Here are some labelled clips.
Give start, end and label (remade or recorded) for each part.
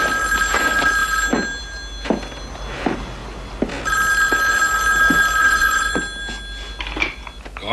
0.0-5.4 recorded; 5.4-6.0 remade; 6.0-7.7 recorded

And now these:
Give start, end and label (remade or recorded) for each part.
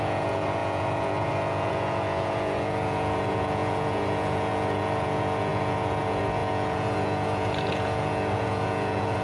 0.0-9.2 remade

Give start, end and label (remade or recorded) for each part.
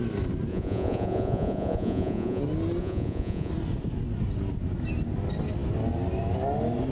0.0-0.5 recorded; 0.5-2.4 remade; 2.4-2.8 recorded; 2.8-3.5 remade; 3.5-6.9 recorded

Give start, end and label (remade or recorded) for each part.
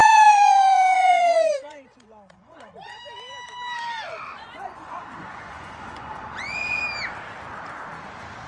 0.0-3.0 remade; 3.0-4.3 recorded; 4.3-6.8 remade; 6.8-8.5 recorded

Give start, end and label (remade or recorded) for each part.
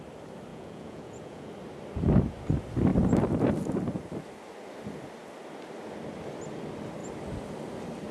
0.0-0.5 recorded; 0.5-1.5 remade; 1.5-8.1 recorded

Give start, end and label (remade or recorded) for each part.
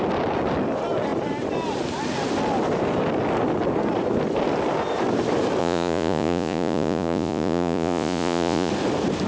0.0-5.6 recorded; 5.6-8.7 remade; 8.7-9.3 recorded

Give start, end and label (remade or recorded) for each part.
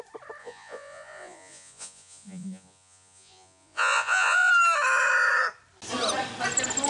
0.0-0.4 recorded; 0.4-4.5 remade; 4.5-6.9 recorded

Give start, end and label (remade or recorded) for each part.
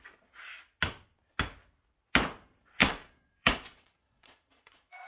0.0-2.8 recorded; 2.8-5.1 remade